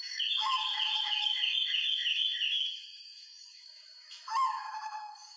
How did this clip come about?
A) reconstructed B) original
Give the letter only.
A